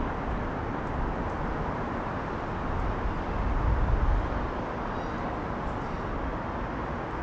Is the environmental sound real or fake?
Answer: real